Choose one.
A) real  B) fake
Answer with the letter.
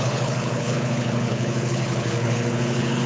B